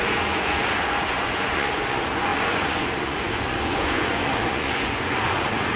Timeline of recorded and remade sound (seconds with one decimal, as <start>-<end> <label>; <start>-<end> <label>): 0.0-5.8 remade